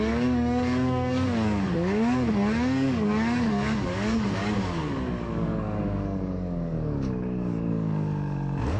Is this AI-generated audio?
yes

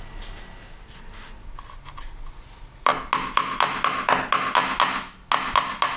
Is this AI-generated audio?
no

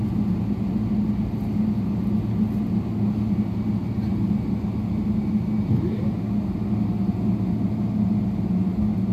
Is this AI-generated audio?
no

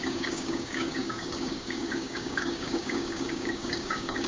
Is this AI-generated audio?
yes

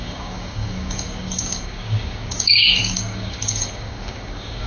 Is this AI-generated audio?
yes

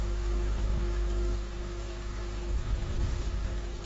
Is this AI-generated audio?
yes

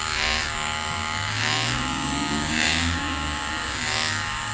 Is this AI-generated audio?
yes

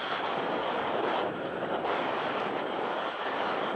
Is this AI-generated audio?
yes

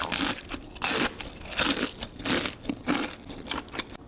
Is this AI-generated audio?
no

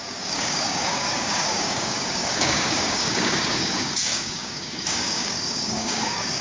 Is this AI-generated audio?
yes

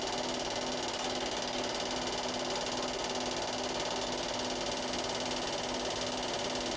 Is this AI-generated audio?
no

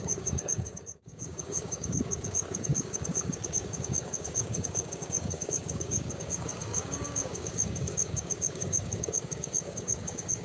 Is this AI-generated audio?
yes